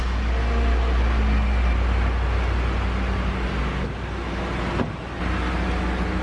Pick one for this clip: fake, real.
real